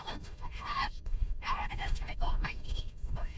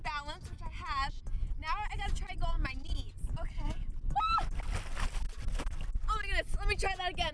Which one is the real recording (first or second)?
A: second